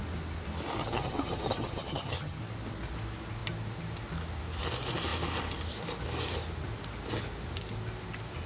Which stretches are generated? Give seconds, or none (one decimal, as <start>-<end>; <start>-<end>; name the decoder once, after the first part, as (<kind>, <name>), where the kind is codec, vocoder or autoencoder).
0.8-2.4 (vocoder, HiFi-GAN)